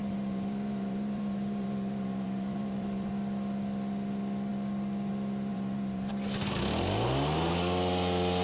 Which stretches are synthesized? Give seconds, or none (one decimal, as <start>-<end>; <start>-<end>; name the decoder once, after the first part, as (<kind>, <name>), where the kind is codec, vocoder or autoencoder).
0.0-3.1 (vocoder, BigVGAN v2); 5.5-6.1

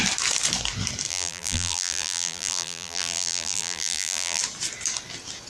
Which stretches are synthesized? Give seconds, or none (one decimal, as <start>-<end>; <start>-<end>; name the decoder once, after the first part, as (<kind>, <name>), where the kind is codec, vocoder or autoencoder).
1.1-4.4 (vocoder, BigVGAN v2)

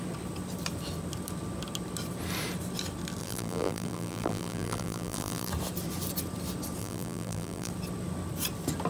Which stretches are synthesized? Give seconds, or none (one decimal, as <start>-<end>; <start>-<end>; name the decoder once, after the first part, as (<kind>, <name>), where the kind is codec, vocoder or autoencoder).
3.2-5.5 (vocoder, BigVGAN v2); 6.8-7.7

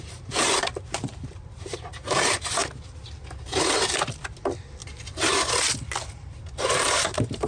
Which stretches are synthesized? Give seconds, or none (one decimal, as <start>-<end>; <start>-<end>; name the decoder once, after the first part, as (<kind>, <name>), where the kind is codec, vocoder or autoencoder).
0.0-2.6 (vocoder, BigVGAN v2); 6.1-7.5

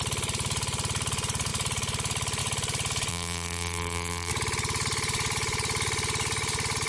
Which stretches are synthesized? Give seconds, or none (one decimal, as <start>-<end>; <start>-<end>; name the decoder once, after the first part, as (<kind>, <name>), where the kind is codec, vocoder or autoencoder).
3.1-4.3 (vocoder, BigVGAN v2)

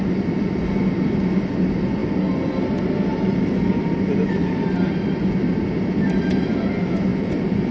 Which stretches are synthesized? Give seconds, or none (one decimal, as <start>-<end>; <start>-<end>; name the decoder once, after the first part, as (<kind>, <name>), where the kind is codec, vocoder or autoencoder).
4.4-5.2 (vocoder, BigVGAN v2); 7.1-7.7

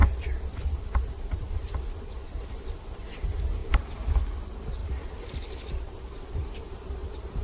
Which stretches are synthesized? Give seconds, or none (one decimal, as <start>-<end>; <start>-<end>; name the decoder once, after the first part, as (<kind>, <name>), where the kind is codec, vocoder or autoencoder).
0.0-2.4 (vocoder, BigVGAN v2); 3.6-4.2; 4.8-5.8; 6.4-7.4

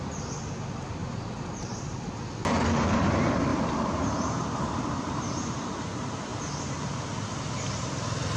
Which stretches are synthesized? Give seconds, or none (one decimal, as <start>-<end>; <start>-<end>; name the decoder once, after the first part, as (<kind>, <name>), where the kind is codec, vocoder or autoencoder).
1.0-2.0 (vocoder, BigVGAN v2); 3.5-5.3